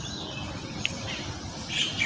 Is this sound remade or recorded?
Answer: recorded